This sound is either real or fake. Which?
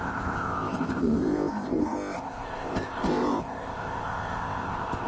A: fake